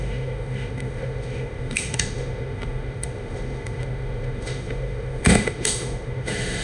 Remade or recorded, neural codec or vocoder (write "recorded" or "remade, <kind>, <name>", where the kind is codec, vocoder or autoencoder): remade, autoencoder, DAC-VAE